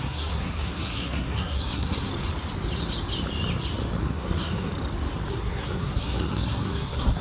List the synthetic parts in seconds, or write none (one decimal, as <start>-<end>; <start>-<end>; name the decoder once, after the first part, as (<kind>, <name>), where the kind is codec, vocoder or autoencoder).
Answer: 0.0-2.1 (codec, SNAC); 4.0-4.7; 5.3-7.2